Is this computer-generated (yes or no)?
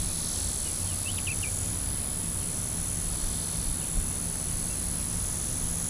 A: no